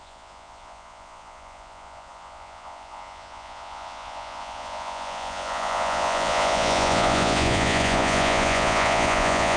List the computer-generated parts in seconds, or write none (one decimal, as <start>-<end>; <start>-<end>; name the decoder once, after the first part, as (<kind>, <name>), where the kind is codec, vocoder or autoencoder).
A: 0.0-9.6 (vocoder, Vocos)